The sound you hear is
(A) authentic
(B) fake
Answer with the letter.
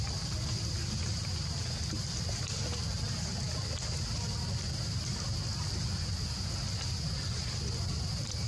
A